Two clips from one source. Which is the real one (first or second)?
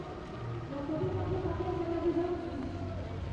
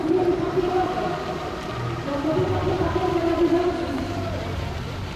first